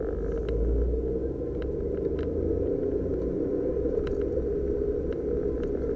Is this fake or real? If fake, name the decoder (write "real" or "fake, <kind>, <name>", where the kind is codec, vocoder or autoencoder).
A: real